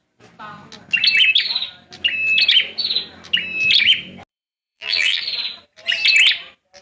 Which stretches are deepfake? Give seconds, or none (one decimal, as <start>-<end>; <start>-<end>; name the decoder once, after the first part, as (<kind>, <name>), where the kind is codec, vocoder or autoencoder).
4.3-5.2 (vocoder, BigVGAN v2)